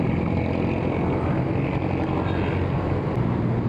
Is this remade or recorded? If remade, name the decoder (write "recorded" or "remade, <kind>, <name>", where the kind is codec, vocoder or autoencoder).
recorded